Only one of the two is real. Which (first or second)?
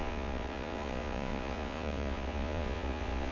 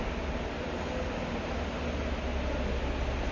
second